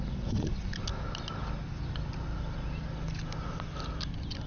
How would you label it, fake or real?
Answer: real